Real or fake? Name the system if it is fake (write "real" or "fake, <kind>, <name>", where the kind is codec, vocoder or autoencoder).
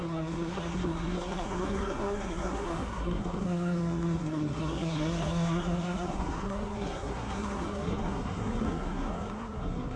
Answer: fake, codec, SNAC